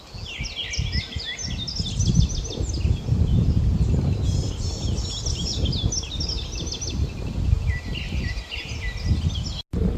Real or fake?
real